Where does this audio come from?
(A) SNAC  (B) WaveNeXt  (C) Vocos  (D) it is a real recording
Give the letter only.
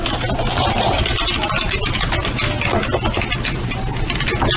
D